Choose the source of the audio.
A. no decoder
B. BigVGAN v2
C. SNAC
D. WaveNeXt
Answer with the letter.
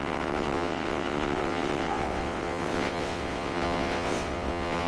D